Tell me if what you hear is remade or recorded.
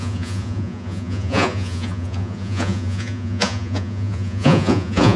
remade